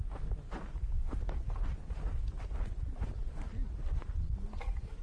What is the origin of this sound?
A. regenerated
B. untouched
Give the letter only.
B